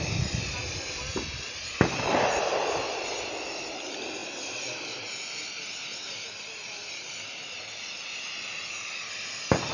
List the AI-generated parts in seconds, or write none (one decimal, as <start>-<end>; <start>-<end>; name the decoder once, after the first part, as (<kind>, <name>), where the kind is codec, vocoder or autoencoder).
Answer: none